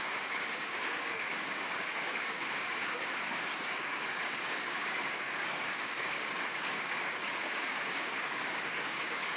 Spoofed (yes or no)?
yes